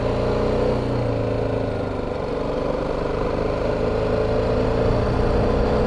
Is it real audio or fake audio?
real